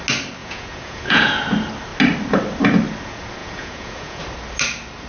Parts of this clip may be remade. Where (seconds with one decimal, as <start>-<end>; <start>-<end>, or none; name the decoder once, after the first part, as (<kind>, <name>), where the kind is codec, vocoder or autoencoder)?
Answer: 0.4-1.4 (vocoder, Vocos); 3.4-4.2